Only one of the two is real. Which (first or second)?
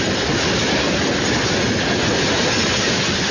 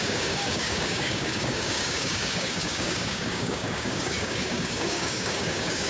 first